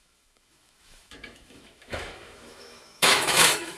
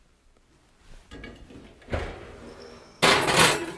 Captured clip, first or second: second